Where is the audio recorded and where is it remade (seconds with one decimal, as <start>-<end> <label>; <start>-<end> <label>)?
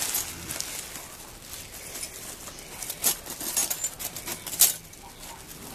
0.0-5.7 recorded